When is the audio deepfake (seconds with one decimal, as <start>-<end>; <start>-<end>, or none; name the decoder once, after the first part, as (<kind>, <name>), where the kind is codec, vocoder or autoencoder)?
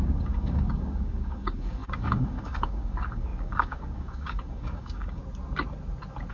0.0-5.2 (codec, DAC)